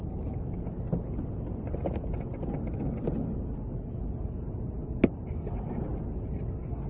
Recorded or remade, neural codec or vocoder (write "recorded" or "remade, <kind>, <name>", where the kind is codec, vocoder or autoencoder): recorded